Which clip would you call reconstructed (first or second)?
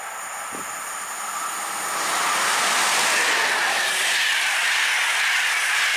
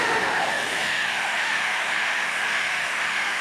second